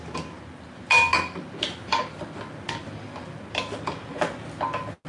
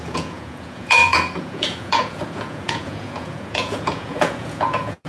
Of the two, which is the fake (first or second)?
second